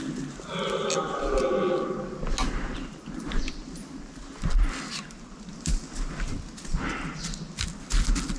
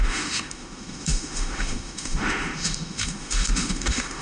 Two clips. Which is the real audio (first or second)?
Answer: first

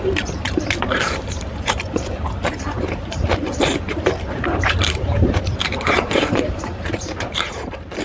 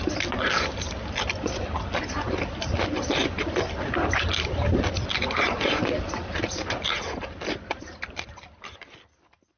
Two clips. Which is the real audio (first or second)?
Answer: second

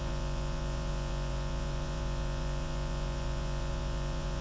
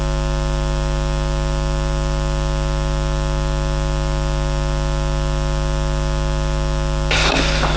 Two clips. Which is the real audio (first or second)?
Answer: second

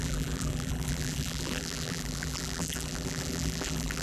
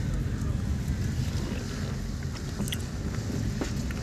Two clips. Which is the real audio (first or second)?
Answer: second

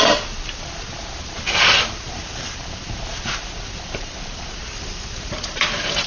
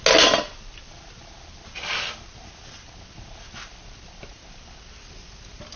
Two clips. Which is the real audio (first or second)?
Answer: second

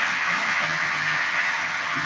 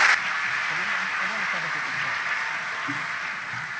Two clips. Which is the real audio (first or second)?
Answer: second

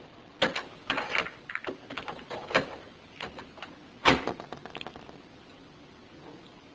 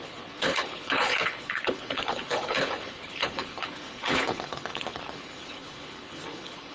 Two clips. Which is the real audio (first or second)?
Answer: first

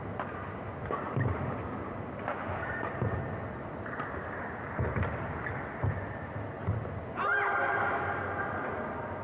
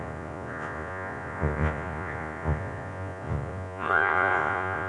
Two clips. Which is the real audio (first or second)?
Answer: first